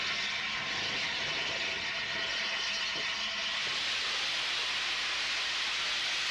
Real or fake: real